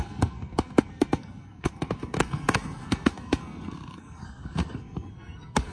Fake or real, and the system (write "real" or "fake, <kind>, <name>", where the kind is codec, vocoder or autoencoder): fake, codec, SNAC